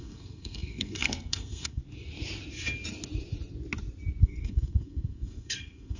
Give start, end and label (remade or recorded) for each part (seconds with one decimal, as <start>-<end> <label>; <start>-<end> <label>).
0.0-1.8 remade; 1.8-4.2 recorded; 4.2-6.0 remade